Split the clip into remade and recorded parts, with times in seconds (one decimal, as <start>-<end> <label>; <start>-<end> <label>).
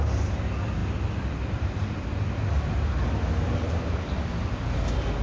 0.0-5.2 recorded